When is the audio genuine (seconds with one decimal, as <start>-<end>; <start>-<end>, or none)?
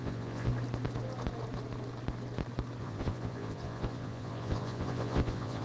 0.5-2.8